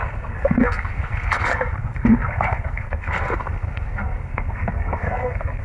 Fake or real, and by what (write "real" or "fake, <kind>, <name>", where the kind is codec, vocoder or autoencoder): fake, codec, SNAC